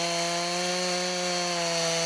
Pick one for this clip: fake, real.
real